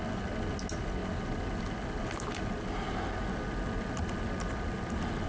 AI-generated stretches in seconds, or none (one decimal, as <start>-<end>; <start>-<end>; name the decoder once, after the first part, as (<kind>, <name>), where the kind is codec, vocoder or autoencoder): none